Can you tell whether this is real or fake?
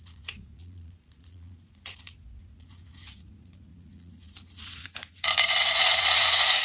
fake